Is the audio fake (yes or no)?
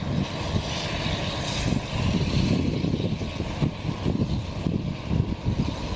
no